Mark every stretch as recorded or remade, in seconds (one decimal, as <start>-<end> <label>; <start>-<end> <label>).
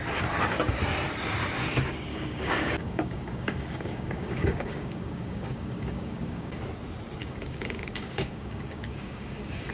0.0-2.1 recorded; 2.1-6.6 remade; 6.6-7.2 recorded; 7.2-9.7 remade